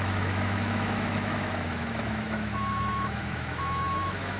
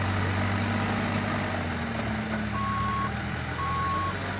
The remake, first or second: first